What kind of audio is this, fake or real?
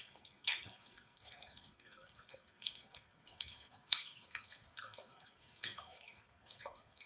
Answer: fake